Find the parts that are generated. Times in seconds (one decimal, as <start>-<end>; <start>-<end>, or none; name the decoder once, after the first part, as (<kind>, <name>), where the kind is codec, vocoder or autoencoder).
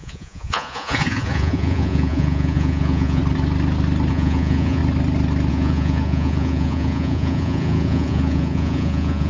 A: 0.0-3.2 (vocoder, Vocos); 4.1-4.8; 5.5-9.3